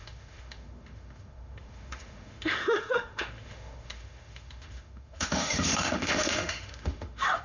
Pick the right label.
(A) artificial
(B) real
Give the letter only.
A